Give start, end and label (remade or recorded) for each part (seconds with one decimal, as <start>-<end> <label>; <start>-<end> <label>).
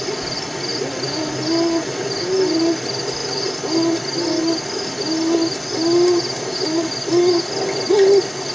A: 0.0-8.5 recorded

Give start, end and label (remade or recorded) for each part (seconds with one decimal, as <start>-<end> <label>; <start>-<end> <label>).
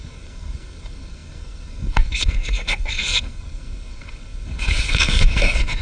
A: 0.0-5.8 remade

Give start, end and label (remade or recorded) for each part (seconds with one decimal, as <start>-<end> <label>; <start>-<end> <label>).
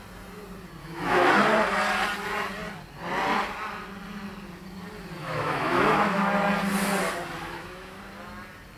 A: 0.0-0.8 recorded; 0.8-1.3 remade; 1.3-5.2 recorded; 5.2-6.3 remade; 6.3-7.4 recorded; 7.4-8.0 remade; 8.0-8.8 recorded